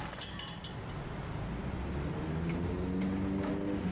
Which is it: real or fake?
real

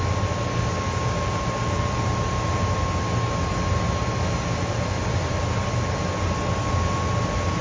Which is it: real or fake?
real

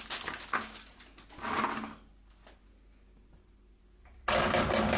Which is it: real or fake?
real